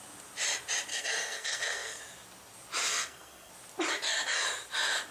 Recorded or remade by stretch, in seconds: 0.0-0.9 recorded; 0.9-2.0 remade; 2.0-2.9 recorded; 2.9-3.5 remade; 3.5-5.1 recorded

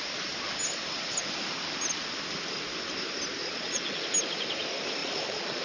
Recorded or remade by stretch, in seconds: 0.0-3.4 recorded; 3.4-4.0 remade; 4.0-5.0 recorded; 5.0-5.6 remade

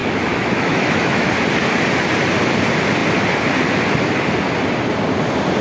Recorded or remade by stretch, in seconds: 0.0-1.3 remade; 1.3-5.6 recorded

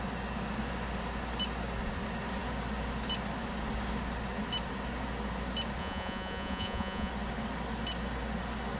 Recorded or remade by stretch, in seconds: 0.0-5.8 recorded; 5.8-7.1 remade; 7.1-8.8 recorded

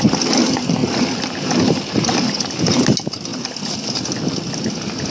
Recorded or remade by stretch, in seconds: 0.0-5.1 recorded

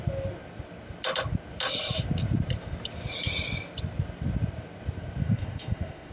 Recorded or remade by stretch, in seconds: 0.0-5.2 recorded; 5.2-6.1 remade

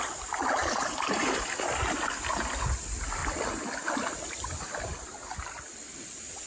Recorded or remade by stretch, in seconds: 0.0-0.6 recorded; 0.6-1.8 remade; 1.8-6.5 recorded

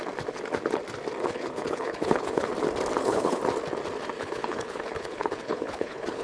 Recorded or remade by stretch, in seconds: 0.0-1.2 recorded; 1.2-2.5 remade; 2.5-3.0 recorded; 3.0-3.4 remade; 3.4-4.2 recorded; 4.2-6.2 remade